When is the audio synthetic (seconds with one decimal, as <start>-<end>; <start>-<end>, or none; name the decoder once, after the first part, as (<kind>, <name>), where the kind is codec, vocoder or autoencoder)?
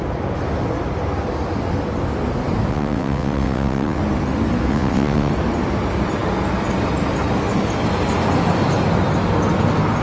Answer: 2.7-4.0 (vocoder, WaveNeXt); 4.7-5.3